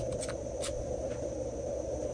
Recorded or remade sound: recorded